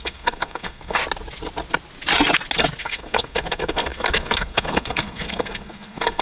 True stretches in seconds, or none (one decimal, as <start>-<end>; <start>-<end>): 1.0-2.8